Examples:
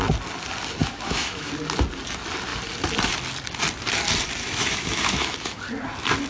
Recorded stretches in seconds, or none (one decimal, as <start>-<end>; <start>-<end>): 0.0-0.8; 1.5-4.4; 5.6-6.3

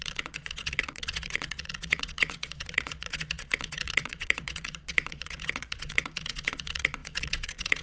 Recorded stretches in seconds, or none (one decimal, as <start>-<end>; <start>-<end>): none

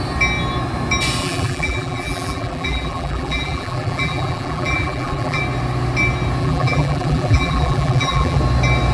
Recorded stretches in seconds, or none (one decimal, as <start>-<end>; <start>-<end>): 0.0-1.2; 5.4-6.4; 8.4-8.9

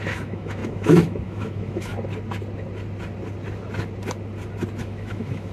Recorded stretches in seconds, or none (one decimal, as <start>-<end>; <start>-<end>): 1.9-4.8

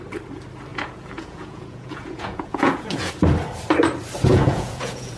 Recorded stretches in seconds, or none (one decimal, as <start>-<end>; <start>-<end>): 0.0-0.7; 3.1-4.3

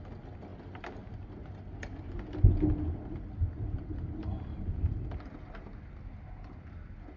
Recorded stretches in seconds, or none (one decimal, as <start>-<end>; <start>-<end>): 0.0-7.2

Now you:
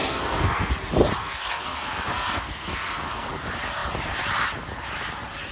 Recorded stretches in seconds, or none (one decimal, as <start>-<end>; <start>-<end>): 0.7-1.2; 3.3-5.5